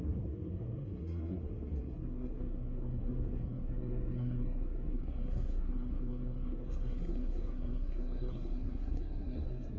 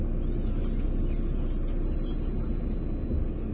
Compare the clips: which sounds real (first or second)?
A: second